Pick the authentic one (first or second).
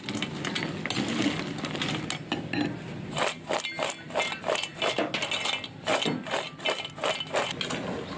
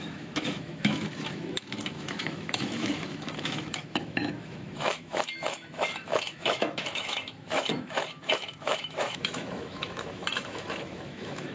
first